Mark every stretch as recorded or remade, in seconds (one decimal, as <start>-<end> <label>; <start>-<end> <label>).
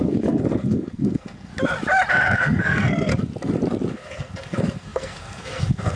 0.0-1.5 remade; 1.5-2.1 recorded; 2.1-3.1 remade; 3.1-3.9 recorded; 3.9-6.0 remade